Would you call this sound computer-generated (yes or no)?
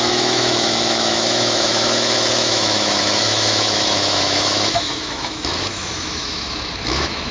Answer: yes